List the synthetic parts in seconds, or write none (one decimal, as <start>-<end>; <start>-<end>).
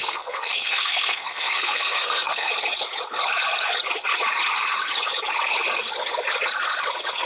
0.0-2.5